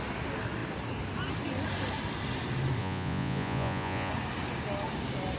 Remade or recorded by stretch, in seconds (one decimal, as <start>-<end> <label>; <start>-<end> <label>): 0.0-2.8 recorded; 2.8-4.1 remade; 4.1-5.4 recorded